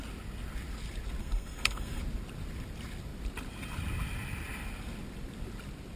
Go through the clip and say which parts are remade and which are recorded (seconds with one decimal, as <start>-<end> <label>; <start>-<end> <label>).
0.0-1.2 recorded; 1.2-2.0 remade; 2.0-6.0 recorded